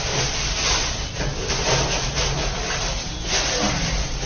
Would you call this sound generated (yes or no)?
no